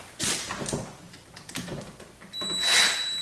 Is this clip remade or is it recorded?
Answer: recorded